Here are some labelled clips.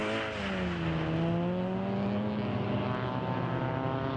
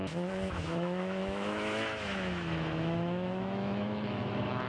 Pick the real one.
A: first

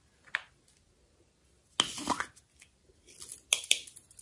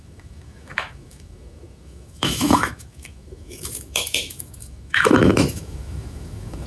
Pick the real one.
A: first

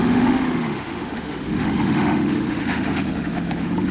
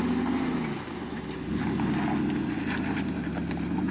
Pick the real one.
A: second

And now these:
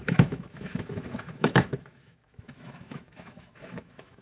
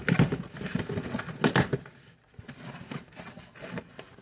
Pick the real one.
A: second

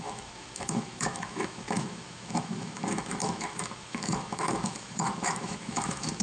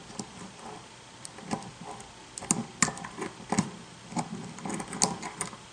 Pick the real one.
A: second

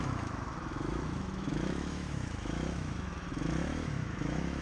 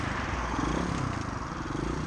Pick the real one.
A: second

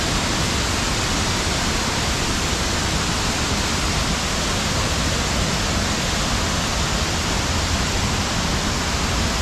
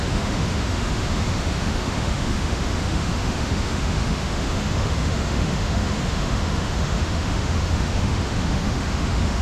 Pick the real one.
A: first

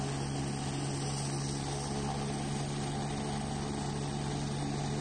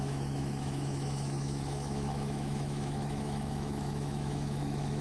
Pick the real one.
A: first